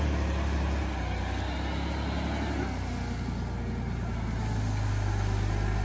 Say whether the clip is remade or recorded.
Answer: recorded